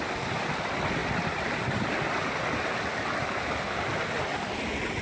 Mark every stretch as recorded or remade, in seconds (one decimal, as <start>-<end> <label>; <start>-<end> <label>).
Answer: 0.0-5.0 recorded